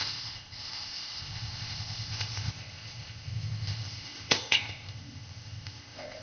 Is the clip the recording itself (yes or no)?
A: no